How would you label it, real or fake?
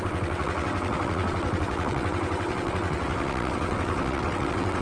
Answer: fake